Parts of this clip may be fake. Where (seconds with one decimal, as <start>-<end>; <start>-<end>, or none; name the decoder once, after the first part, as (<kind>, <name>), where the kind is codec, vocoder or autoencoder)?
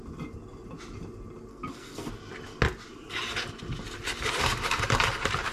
1.5-2.1 (codec, SNAC)